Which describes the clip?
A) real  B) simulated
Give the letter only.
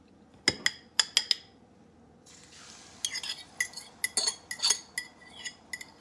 A